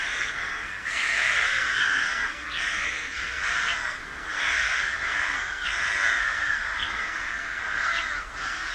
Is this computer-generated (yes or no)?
yes